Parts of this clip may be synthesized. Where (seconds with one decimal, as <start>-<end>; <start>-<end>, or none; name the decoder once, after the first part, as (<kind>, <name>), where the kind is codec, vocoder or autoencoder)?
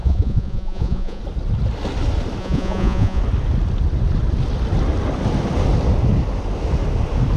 0.0-1.2 (vocoder, Vocos); 2.4-3.2